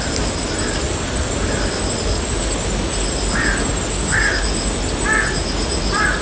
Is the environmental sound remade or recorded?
recorded